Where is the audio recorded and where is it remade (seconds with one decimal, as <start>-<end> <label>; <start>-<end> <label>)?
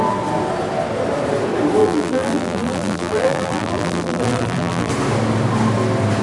0.0-1.8 recorded; 1.8-4.9 remade; 4.9-6.2 recorded